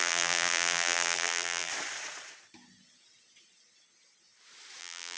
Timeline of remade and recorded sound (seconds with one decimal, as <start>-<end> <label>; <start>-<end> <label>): 0.0-1.7 remade; 1.7-4.8 recorded; 4.8-5.2 remade